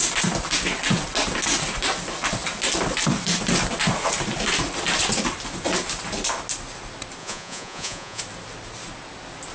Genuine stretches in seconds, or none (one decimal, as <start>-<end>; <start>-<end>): 0.0-7.2; 8.2-9.5